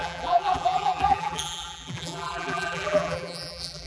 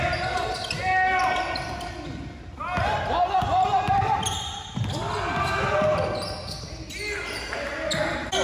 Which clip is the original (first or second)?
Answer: second